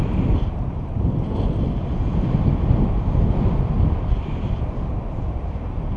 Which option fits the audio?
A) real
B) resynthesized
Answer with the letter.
A